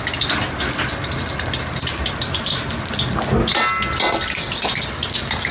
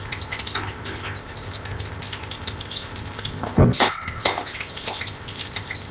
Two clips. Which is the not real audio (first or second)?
second